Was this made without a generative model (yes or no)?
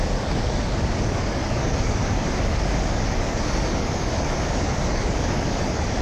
no